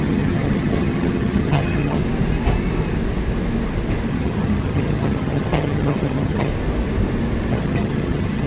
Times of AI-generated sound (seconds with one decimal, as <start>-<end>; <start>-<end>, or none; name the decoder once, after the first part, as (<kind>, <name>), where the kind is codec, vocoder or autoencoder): 0.0-2.0 (vocoder, HiFi-GAN); 4.1-6.5; 7.5-8.5